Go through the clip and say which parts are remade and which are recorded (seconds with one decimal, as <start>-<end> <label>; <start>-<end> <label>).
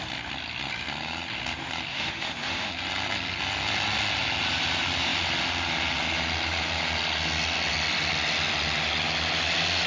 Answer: 0.0-1.9 recorded; 1.9-2.7 remade; 2.7-9.9 recorded